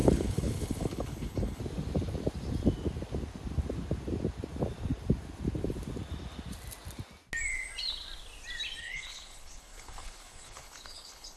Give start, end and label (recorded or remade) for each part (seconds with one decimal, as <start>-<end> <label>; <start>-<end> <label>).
0.0-1.6 remade; 1.6-8.8 recorded; 8.8-11.4 remade